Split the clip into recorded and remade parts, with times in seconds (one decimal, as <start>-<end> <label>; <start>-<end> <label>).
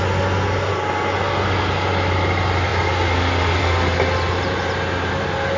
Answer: 0.0-5.6 recorded